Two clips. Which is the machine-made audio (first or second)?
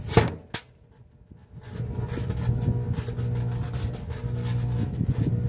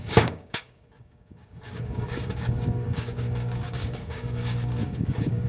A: second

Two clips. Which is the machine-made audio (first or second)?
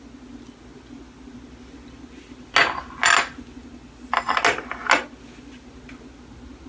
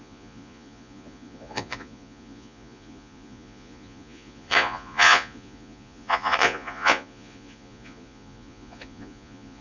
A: second